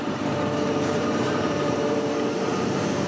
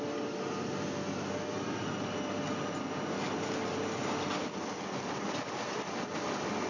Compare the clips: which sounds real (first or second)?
second